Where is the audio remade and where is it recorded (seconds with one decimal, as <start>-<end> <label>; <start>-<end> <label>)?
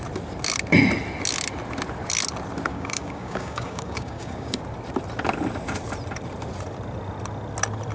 0.0-2.7 recorded; 2.7-4.6 remade; 4.6-7.9 recorded